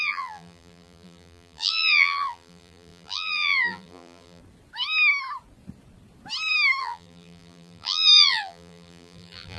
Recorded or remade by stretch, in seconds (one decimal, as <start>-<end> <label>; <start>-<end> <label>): 0.0-4.4 remade; 4.4-6.8 recorded; 6.8-9.6 remade